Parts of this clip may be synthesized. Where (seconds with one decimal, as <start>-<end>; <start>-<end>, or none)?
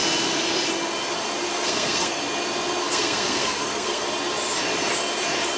1.5-2.2; 2.8-4.1